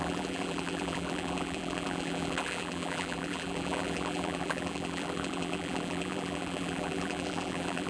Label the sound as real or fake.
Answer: fake